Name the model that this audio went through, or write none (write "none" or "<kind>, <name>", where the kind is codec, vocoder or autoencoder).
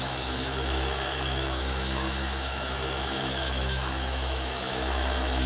autoencoder, DAC-VAE